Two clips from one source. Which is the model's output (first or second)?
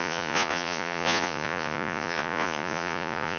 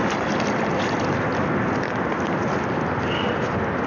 first